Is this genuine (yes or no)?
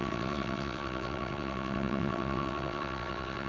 no